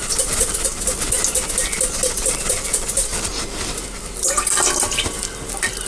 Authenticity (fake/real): real